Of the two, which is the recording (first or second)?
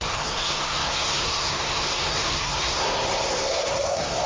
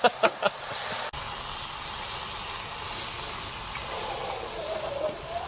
second